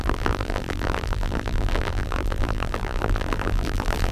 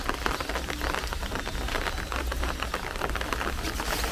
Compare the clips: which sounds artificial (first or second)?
first